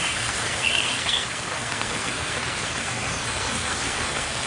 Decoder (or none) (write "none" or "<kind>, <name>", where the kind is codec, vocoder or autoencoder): codec, SNAC